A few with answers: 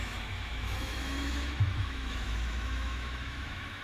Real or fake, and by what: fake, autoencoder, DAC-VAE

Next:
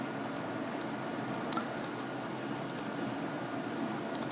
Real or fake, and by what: real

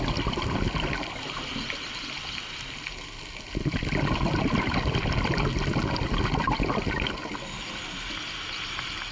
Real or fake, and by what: real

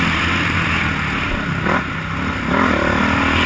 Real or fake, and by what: real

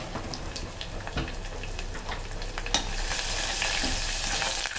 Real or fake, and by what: real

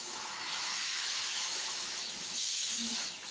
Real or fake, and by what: fake, autoencoder, DAC-VAE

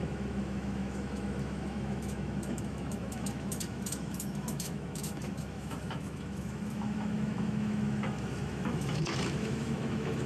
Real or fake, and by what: fake, autoencoder, DAC-VAE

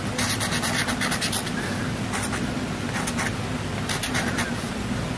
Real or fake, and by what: real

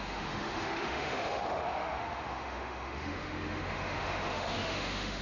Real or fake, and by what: fake, autoencoder, DAC-VAE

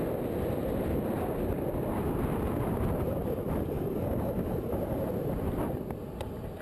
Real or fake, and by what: real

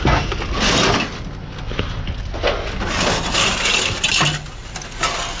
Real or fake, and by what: real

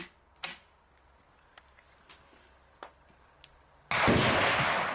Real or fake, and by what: real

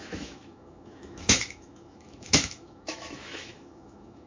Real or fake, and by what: fake, autoencoder, DAC-VAE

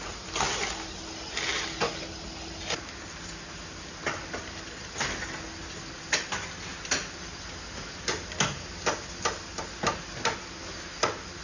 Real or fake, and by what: real